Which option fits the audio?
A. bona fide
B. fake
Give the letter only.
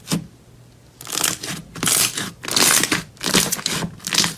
A